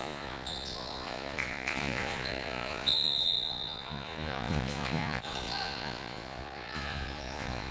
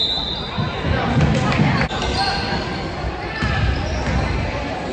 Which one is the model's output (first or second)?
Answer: first